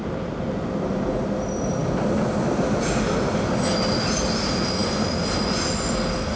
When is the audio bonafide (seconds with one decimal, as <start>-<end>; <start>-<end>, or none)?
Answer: 0.5-6.4